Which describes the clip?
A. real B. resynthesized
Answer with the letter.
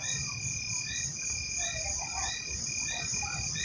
A